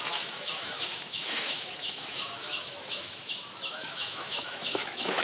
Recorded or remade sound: remade